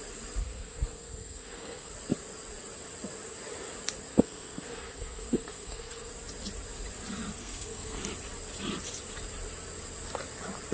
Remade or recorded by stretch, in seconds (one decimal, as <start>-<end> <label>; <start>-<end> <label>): 0.0-0.4 recorded; 0.4-1.9 remade; 1.9-4.1 recorded; 4.1-6.1 remade; 6.1-7.4 recorded; 7.4-8.0 remade; 8.0-10.7 recorded